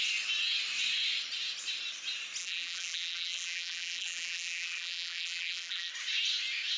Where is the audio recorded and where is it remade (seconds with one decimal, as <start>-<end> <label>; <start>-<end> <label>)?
0.0-2.4 recorded; 2.4-5.9 remade; 5.9-6.8 recorded